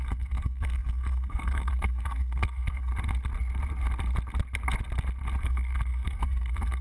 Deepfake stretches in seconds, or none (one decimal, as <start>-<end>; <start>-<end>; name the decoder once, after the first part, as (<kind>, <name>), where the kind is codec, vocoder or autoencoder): 0.0-2.9 (codec, SNAC); 5.4-6.8